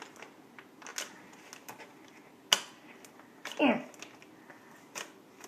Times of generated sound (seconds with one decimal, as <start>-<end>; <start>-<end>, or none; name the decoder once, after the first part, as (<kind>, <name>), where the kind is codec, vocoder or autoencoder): none